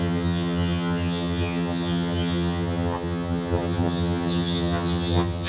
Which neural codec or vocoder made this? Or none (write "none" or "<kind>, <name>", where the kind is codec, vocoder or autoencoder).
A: vocoder, HiFi-GAN